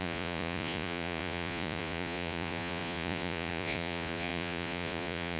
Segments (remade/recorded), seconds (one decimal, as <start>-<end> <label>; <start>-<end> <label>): 0.0-5.4 remade

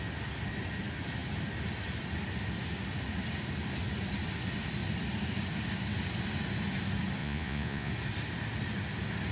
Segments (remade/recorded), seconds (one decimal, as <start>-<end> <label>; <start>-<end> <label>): 0.0-7.2 recorded; 7.2-7.9 remade; 7.9-9.3 recorded

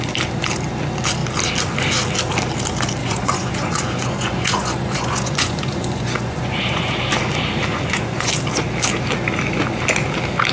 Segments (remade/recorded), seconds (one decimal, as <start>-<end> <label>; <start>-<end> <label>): 0.0-3.0 recorded; 3.0-6.9 remade; 6.9-7.7 recorded; 7.7-8.3 remade; 8.3-10.5 recorded